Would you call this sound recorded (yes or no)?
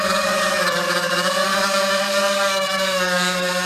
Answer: no